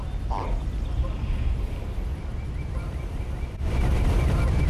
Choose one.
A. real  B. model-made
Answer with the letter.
A